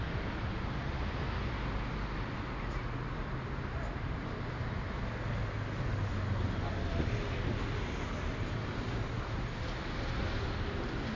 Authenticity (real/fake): real